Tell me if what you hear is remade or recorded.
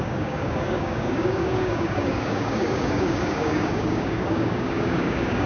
remade